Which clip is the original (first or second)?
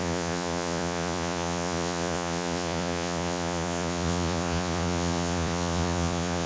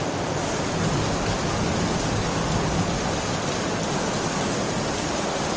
second